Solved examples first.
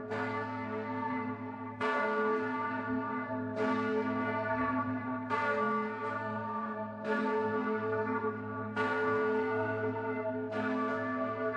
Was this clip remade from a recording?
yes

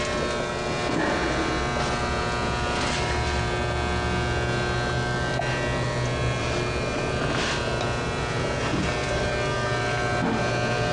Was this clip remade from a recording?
no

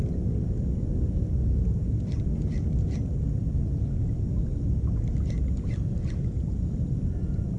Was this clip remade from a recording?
no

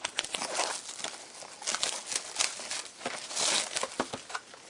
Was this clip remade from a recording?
no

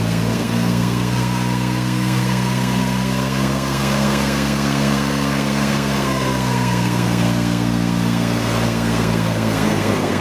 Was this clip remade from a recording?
yes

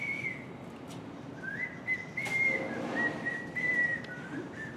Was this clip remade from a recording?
no